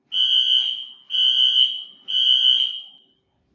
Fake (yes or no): no